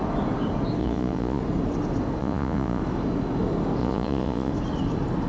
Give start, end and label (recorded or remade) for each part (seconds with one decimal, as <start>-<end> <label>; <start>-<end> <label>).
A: 0.0-0.8 recorded; 0.8-1.4 remade; 1.4-2.2 recorded; 2.2-2.8 remade; 2.8-3.8 recorded; 3.8-4.5 remade; 4.5-5.3 recorded